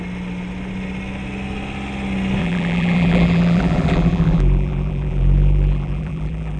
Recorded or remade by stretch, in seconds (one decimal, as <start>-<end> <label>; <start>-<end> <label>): 0.0-2.4 recorded; 2.4-6.6 remade

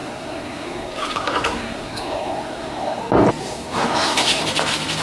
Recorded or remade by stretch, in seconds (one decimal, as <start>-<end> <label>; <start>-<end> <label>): 0.0-3.0 remade; 3.0-3.4 recorded; 3.4-4.4 remade; 4.4-5.0 recorded

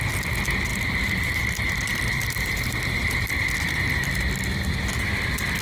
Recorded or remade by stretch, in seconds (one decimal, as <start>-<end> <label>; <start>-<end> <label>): 0.0-5.6 recorded

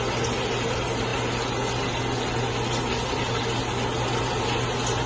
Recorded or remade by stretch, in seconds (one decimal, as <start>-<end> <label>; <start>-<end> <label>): 0.0-5.1 recorded

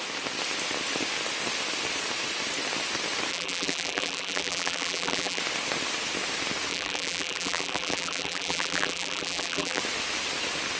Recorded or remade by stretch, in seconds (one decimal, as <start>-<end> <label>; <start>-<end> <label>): 0.0-3.3 recorded; 3.3-5.4 remade; 5.4-6.7 recorded; 6.7-9.8 remade; 9.8-10.8 recorded

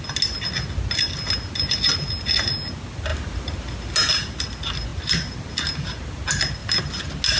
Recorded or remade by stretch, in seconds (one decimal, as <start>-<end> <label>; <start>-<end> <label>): 0.0-4.9 recorded; 4.9-5.5 remade; 5.5-7.4 recorded

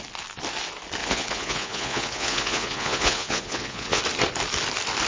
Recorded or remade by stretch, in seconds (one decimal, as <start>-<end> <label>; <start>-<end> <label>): 0.0-1.0 recorded; 1.0-4.0 remade; 4.0-5.1 recorded